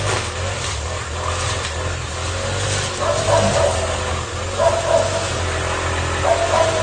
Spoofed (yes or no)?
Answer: no